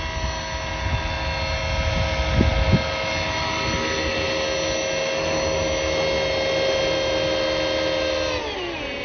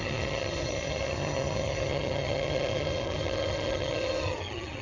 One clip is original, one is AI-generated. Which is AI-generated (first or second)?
second